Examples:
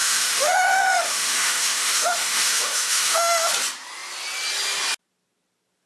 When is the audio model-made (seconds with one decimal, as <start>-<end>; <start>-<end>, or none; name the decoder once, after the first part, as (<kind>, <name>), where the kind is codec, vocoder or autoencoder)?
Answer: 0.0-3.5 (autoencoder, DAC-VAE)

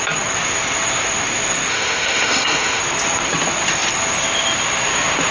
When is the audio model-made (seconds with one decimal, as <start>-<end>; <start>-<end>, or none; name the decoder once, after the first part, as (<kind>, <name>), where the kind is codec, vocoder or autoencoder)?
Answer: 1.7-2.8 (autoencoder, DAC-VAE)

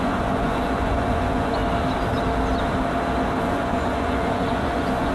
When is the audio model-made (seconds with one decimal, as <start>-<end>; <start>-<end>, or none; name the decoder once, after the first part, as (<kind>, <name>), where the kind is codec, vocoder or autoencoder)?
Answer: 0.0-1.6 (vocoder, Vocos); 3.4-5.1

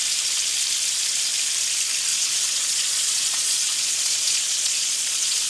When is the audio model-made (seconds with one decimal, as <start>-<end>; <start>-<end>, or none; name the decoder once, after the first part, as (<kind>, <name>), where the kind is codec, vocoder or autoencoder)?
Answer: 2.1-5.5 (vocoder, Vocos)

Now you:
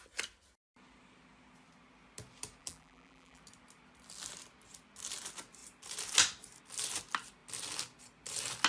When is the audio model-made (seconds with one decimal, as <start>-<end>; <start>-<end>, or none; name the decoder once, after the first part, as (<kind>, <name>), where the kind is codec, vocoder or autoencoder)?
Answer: 2.6-3.4 (vocoder, BigVGAN v2)

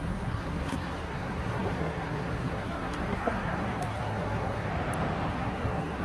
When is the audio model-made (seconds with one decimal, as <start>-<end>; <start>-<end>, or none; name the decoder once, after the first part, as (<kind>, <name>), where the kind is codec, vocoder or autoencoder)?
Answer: 0.0-4.7 (codec, SNAC); 5.3-6.0

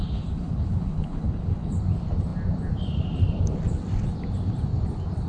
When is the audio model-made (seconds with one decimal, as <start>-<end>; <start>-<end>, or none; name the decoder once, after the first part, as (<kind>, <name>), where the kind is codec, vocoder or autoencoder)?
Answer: 0.0-1.8 (codec, HILCodec)